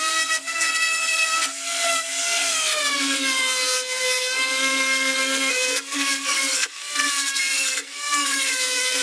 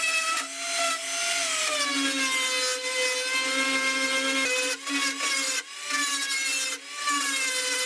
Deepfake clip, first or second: first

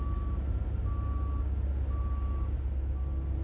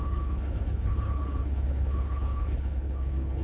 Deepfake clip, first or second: second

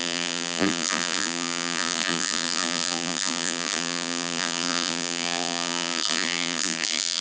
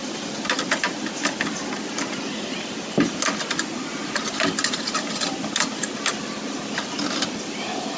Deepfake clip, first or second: first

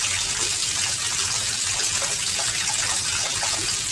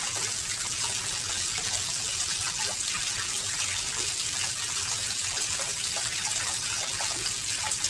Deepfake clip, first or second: second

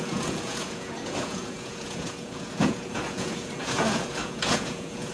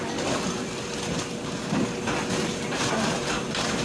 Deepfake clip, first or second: first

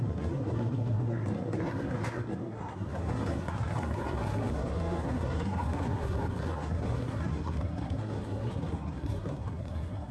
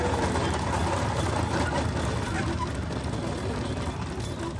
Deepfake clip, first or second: first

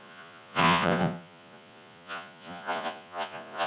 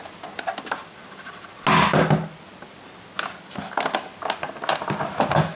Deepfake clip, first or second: first